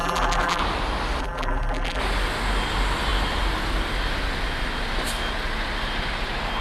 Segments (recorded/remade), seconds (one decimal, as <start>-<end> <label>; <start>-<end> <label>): 0.0-0.6 remade; 0.6-1.2 recorded; 1.2-2.0 remade; 2.0-6.6 recorded